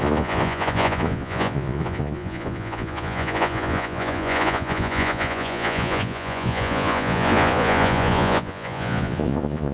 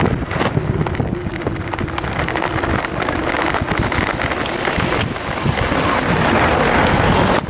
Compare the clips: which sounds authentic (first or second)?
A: second